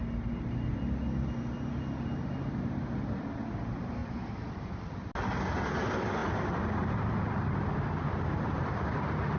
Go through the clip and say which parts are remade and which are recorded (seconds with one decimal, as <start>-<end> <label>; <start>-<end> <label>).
0.0-0.8 remade; 0.8-4.0 recorded; 4.0-4.8 remade; 4.8-9.4 recorded